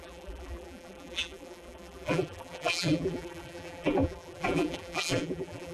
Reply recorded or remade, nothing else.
remade